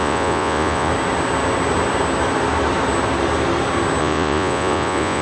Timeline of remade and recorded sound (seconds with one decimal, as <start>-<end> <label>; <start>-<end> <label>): 0.0-0.9 remade; 0.9-4.0 recorded; 4.0-5.2 remade